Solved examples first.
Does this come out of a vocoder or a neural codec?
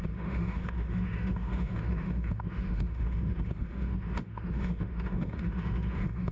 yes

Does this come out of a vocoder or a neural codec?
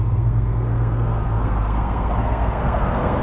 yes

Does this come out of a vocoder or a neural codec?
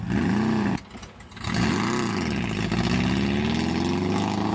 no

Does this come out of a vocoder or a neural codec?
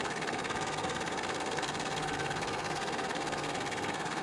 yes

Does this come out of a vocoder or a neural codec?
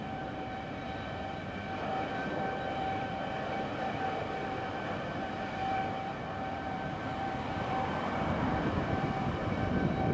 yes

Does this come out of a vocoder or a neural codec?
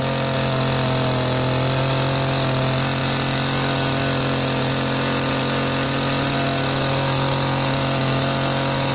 no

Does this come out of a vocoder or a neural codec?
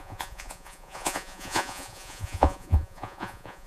yes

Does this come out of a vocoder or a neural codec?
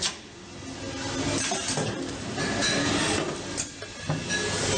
no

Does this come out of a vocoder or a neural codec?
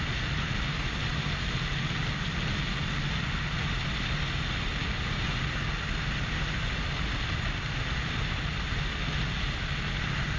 no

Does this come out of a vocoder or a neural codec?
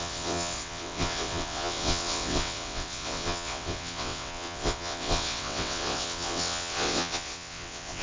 yes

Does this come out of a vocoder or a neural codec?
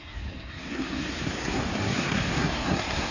yes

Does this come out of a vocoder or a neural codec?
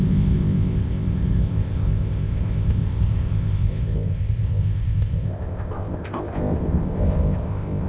yes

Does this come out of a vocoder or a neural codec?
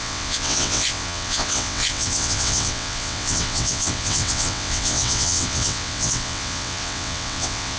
yes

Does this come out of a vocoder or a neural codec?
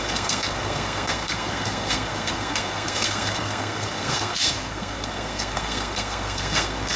yes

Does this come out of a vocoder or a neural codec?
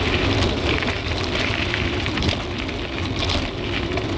no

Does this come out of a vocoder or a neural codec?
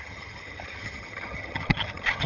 yes